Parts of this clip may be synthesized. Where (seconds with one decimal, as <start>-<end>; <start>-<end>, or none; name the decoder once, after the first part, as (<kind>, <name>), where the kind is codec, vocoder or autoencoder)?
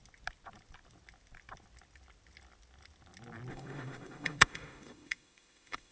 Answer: 3.5-5.9 (autoencoder, DAC-VAE)